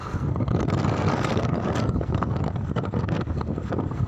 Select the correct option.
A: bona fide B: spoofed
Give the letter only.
B